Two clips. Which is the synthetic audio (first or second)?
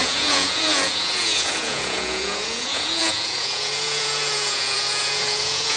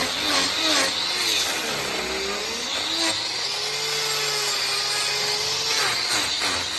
first